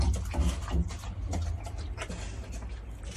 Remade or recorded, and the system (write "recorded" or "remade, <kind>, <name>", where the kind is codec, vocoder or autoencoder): recorded